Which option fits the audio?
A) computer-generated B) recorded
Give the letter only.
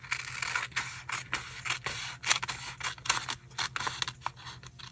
B